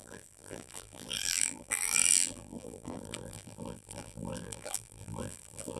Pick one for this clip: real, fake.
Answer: fake